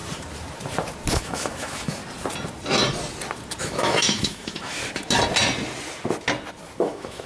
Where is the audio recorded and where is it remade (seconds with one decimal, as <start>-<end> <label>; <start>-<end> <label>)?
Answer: 0.0-1.1 recorded; 1.1-2.0 remade; 2.0-3.6 recorded; 3.6-4.8 remade; 4.8-6.8 recorded; 6.8-7.3 remade